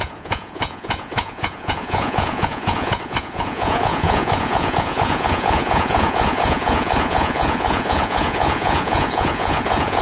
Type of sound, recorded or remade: remade